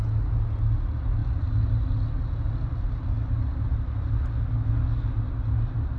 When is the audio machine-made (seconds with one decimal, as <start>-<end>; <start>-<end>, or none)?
none